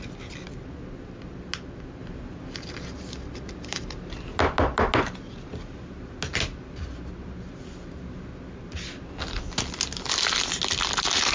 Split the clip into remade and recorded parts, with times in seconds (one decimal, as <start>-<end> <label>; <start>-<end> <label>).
0.0-11.3 recorded